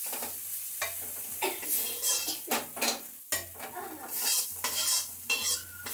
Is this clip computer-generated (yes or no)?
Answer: no